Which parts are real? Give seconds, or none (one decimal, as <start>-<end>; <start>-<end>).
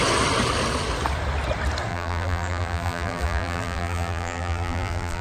0.0-1.9